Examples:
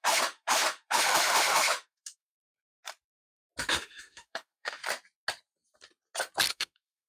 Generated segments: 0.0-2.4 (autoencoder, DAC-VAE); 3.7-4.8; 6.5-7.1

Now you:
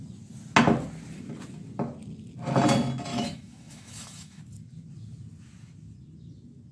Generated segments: 3.1-4.4 (autoencoder, DAC-VAE)

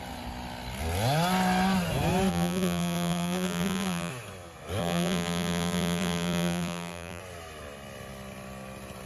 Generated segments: 2.3-4.1 (vocoder, BigVGAN v2); 4.8-7.2